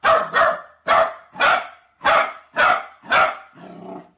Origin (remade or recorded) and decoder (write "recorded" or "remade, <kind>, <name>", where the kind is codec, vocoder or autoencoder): recorded